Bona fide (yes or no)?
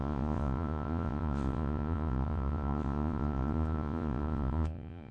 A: no